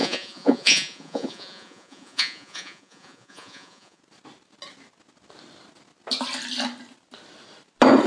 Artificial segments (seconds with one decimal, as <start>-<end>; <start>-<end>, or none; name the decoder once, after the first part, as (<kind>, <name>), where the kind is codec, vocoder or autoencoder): 0.0-4.0 (vocoder, Vocos)